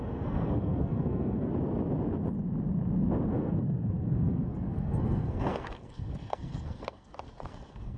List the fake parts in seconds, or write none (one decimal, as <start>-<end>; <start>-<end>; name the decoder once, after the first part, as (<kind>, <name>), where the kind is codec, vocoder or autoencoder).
0.0-1.5 (codec, SNAC); 3.3-8.0